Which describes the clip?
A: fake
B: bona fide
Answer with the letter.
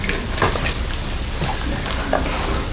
B